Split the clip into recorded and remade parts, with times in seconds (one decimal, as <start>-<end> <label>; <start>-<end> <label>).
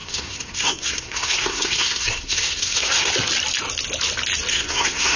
0.0-3.1 remade; 3.1-4.5 recorded; 4.5-5.2 remade